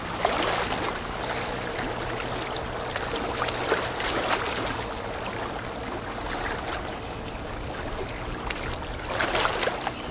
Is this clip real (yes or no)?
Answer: yes